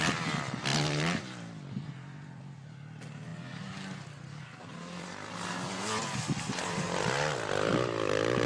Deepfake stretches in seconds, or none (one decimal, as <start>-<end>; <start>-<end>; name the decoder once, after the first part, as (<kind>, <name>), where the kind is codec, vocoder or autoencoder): none